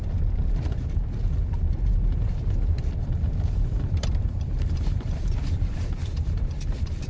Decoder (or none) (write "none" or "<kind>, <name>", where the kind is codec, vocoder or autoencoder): vocoder, BigVGAN v2